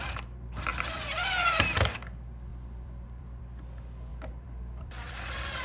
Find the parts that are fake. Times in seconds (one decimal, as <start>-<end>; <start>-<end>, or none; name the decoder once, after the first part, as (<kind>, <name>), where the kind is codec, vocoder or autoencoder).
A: 0.7-1.3 (vocoder, BigVGAN v2); 2.5-3.4; 4.1-5.6